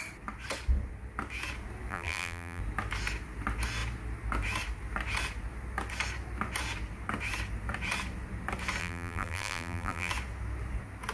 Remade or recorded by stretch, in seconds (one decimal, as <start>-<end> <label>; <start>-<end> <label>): 0.0-1.9 recorded; 1.9-2.6 remade; 2.6-8.8 recorded; 8.8-10.1 remade; 10.1-11.1 recorded